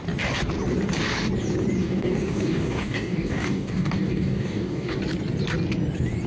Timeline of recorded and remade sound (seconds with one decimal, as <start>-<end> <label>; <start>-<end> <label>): 0.0-1.8 recorded; 1.8-5.0 remade; 5.0-6.3 recorded